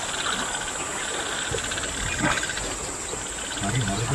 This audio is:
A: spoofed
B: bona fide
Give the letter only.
B